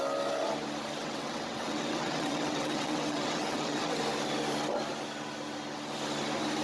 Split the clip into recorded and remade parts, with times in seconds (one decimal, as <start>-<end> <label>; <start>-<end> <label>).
0.0-1.0 recorded; 1.0-4.0 remade; 4.0-6.6 recorded